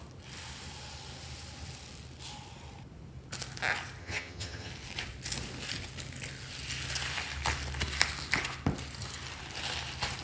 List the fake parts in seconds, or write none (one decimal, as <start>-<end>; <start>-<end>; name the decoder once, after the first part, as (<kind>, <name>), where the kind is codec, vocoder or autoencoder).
4.0-4.7 (vocoder, HiFi-GAN)